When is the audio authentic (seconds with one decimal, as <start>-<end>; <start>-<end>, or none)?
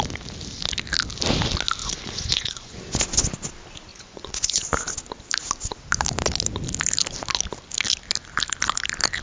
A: 0.0-1.8; 2.8-3.9; 4.6-9.2